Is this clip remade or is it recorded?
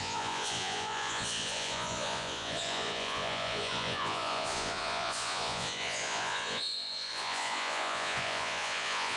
remade